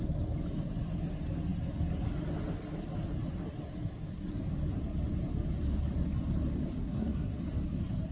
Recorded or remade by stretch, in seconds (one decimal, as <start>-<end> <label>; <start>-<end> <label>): 0.0-6.8 recorded; 6.8-7.4 remade; 7.4-8.1 recorded